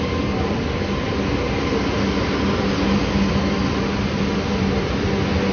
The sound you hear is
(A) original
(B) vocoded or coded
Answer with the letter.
A